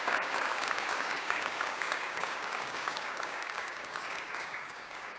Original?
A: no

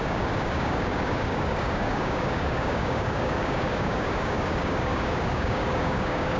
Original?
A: no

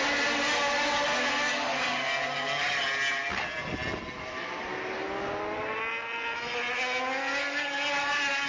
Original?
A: yes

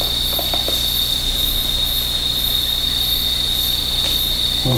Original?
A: yes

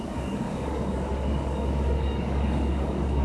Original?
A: no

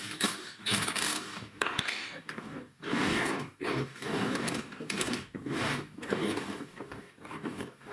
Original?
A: no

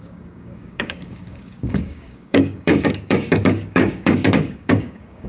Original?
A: no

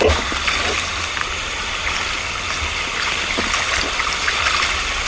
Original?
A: yes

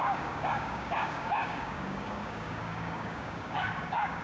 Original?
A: no